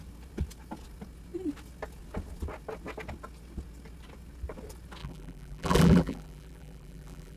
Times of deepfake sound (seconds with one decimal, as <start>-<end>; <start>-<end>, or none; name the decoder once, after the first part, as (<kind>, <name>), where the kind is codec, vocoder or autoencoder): 5.0-7.4 (vocoder, BigVGAN v2)